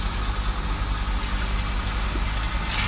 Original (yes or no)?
yes